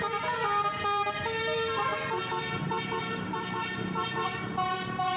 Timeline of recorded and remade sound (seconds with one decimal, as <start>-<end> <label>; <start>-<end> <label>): 0.0-1.9 remade; 1.9-2.7 recorded; 2.7-5.2 remade